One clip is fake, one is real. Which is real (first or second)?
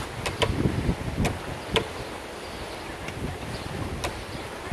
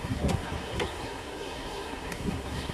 first